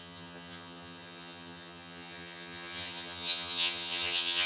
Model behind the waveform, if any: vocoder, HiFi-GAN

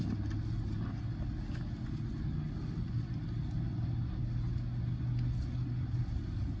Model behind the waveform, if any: none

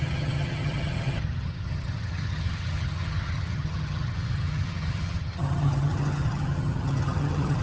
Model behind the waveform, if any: vocoder, HiFi-GAN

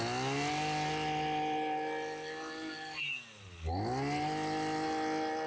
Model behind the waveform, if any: none